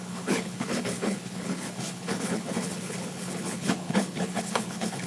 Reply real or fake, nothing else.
fake